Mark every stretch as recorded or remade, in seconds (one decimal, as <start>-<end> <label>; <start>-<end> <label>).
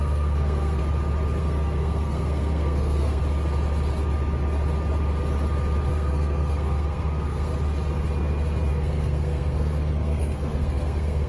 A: 0.0-0.8 remade; 0.8-1.4 recorded; 1.4-3.2 remade; 3.2-5.9 recorded; 5.9-7.5 remade; 7.5-8.7 recorded; 8.7-11.3 remade